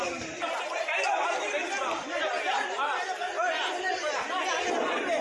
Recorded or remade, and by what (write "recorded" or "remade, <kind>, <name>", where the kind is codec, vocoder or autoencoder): recorded